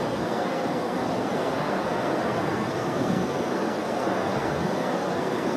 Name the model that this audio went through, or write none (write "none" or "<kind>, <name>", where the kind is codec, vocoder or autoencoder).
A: codec, SNAC